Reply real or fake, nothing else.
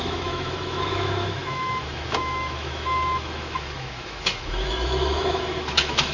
fake